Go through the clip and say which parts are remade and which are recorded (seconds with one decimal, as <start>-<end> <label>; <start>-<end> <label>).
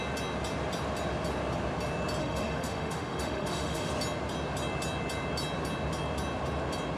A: 0.0-2.2 recorded; 2.2-3.9 remade; 3.9-7.0 recorded